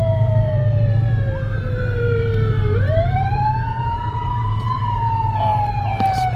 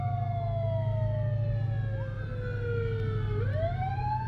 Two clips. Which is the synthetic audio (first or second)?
first